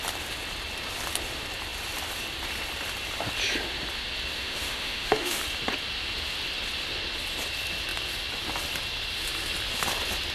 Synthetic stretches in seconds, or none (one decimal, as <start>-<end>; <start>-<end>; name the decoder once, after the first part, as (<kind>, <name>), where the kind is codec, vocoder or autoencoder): 4.4-5.4 (autoencoder, DAC-VAE)